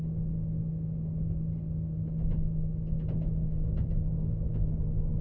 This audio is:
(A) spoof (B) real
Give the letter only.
B